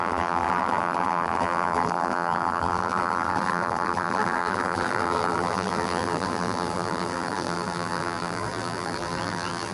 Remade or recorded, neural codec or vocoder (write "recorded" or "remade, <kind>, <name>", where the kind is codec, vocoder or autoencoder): remade, vocoder, BigVGAN v2